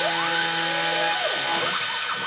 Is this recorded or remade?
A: recorded